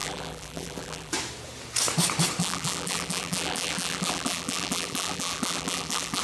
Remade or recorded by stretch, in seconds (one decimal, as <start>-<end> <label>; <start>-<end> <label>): 0.0-1.1 remade; 1.1-2.4 recorded; 2.4-6.2 remade